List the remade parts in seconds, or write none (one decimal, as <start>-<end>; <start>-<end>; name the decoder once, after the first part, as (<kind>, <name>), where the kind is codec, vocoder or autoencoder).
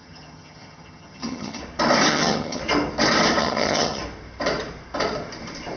0.0-1.6 (vocoder, HiFi-GAN); 2.1-2.6; 3.4-4.0